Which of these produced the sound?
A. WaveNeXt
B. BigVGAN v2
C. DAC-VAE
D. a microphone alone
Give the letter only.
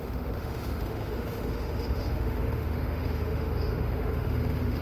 C